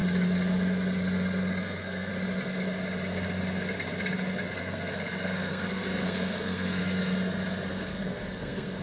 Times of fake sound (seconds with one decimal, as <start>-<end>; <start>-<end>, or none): 1.6-2.1; 4.6-6.8; 7.7-8.8